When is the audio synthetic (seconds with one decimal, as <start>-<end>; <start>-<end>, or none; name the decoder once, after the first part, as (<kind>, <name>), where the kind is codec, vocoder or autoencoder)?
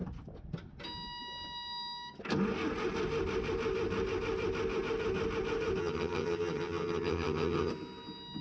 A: 5.8-7.7 (vocoder, HiFi-GAN)